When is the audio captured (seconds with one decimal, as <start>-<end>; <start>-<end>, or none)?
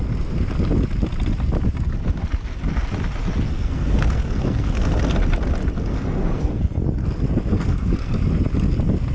0.0-3.5; 5.0-5.9; 6.6-7.5; 8.2-9.1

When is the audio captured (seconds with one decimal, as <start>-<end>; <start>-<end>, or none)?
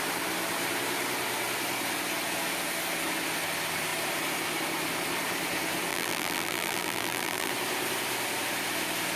0.0-5.9; 7.5-9.2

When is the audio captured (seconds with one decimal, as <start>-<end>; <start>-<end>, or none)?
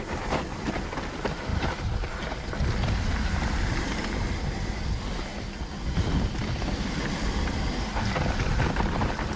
0.0-9.4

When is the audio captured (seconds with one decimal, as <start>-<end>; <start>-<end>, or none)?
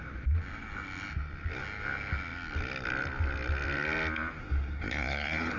0.0-4.4